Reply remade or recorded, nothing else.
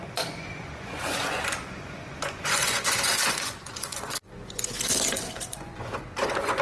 remade